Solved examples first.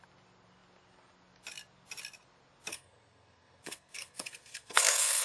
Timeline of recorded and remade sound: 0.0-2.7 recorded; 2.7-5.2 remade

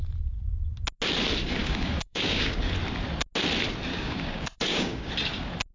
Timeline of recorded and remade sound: 0.0-1.6 recorded; 1.6-2.6 remade; 2.6-3.9 recorded; 3.9-5.1 remade; 5.1-5.7 recorded

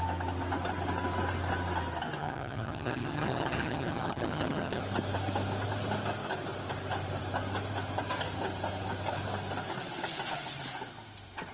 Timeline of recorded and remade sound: 0.0-2.2 recorded; 2.2-4.8 remade; 4.8-11.5 recorded